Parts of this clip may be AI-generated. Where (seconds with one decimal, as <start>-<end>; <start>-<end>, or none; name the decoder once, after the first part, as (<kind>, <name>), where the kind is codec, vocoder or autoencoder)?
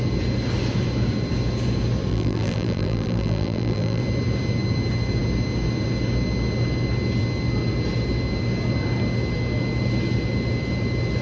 2.1-4.0 (vocoder, BigVGAN v2)